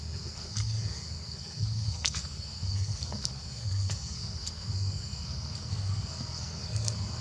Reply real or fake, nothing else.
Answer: fake